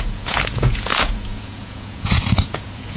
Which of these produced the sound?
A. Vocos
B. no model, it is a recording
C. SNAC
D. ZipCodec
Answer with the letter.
A